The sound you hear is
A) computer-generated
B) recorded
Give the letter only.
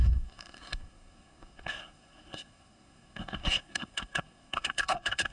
A